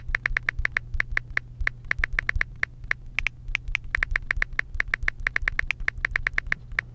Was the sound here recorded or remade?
recorded